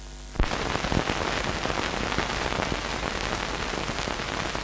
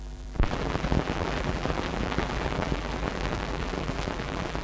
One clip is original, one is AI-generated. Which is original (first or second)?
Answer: first